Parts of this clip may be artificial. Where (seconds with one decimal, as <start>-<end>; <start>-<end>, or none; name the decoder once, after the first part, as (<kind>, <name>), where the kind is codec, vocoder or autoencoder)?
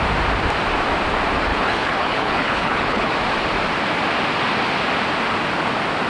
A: 1.5-3.1 (codec, HILCodec)